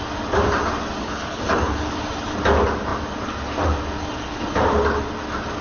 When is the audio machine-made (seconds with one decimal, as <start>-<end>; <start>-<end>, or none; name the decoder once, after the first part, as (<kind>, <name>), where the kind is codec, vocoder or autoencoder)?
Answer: 1.0-1.9 (codec, HILCodec)